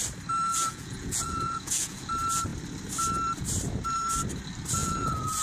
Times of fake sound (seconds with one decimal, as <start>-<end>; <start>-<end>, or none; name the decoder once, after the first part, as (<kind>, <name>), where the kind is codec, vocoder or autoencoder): 0.5-2.1 (vocoder, Vocos); 4.8-5.4